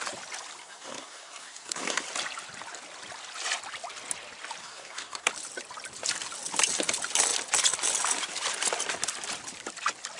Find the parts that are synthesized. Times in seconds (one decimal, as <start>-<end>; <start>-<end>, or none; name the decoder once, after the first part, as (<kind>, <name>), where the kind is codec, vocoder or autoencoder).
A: 0.6-2.0 (codec, SNAC); 4.6-5.3